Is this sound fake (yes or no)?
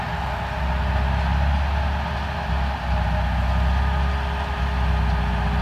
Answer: no